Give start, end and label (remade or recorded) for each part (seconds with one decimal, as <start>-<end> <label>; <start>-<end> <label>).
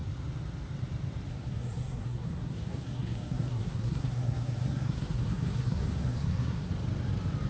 0.0-1.3 recorded; 1.3-6.7 remade; 6.7-7.5 recorded